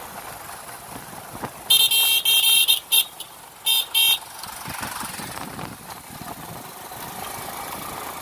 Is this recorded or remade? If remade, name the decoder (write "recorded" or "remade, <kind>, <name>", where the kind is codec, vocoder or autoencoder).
recorded